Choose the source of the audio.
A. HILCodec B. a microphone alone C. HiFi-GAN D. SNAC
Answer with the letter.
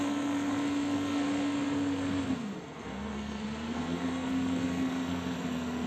D